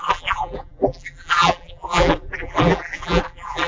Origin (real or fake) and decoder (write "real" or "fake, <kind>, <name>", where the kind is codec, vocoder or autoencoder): fake, vocoder, BigVGAN v2